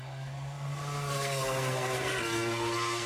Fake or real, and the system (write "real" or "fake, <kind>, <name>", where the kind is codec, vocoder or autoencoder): fake, codec, SNAC